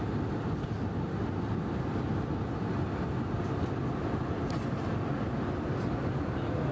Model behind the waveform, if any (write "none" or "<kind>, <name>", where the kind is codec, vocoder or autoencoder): none